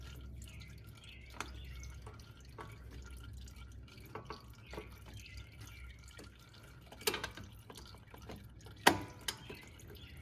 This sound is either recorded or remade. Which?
recorded